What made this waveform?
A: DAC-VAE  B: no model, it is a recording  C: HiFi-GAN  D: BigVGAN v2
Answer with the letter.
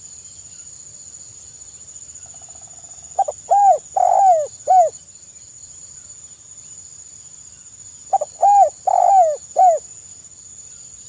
B